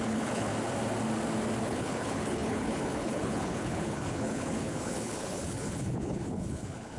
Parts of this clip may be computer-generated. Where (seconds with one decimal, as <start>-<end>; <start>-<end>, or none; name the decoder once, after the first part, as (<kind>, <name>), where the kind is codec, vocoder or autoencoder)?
0.0-0.5 (codec, HILCodec); 1.6-7.0